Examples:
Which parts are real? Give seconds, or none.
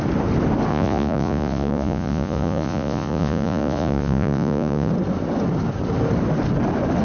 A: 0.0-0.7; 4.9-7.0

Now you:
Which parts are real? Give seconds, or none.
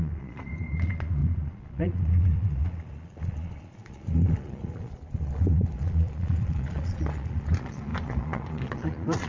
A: none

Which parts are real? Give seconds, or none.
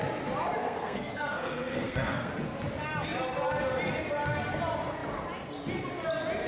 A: 0.0-0.6; 2.3-6.5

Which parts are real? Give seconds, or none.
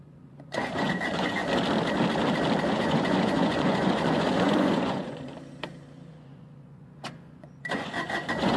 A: 1.4-2.7; 5.3-6.1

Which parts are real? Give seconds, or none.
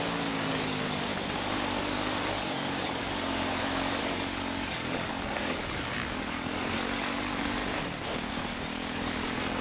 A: 1.1-1.8; 7.6-8.3